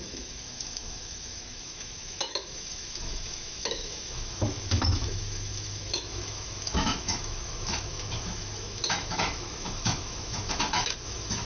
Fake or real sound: fake